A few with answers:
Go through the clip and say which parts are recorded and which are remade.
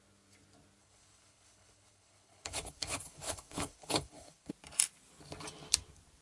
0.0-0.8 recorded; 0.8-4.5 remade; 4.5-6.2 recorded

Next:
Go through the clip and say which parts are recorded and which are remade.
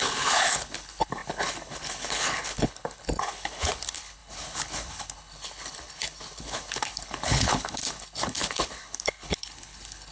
0.0-10.1 remade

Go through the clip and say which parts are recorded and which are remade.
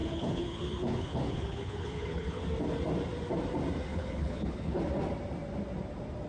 0.0-2.4 remade; 2.4-3.9 recorded; 3.9-4.8 remade; 4.8-6.3 recorded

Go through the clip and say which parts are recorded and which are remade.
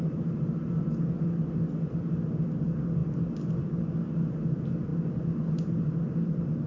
0.0-6.7 recorded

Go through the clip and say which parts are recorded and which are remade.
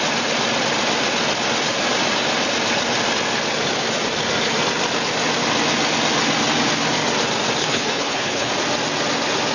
0.0-7.6 recorded; 7.6-8.5 remade; 8.5-9.5 recorded